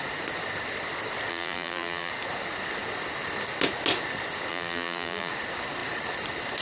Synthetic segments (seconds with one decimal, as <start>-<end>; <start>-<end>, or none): 1.3-2.1; 4.5-5.3